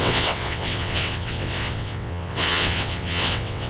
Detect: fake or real fake